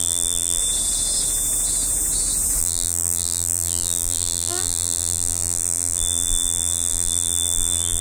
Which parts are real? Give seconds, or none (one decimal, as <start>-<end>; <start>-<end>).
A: 0.6-2.6